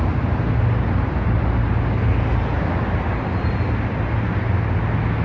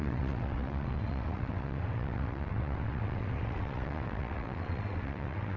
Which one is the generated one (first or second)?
second